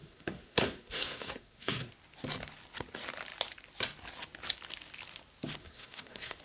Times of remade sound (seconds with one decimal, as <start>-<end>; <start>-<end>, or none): 0.0-1.9; 5.6-6.4